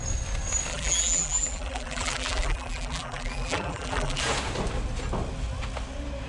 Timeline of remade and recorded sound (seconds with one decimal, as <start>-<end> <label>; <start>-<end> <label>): 0.0-0.7 recorded; 0.7-4.2 remade; 4.2-6.3 recorded

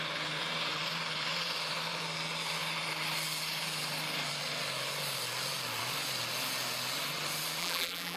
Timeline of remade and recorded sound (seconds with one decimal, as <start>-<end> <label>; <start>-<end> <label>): 0.0-7.6 recorded; 7.6-8.2 remade

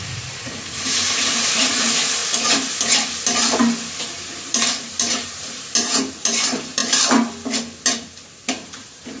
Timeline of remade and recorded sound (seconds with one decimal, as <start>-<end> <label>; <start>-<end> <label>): 0.0-2.2 remade; 2.2-4.0 recorded; 4.0-6.8 remade; 6.8-8.5 recorded; 8.5-9.2 remade